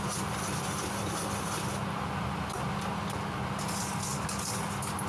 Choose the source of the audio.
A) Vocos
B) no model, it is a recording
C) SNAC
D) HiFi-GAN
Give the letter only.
B